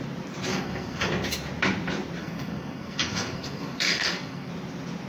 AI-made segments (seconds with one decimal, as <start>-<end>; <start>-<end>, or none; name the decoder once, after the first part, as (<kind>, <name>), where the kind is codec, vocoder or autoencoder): 0.5-1.1 (codec, SNAC); 2.2-4.5